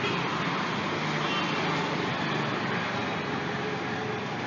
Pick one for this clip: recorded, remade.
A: recorded